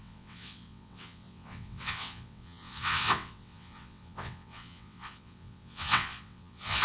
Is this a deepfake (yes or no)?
yes